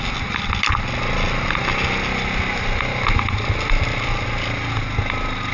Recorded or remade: recorded